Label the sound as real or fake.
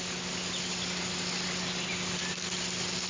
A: real